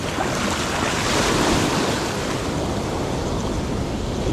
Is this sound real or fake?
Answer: real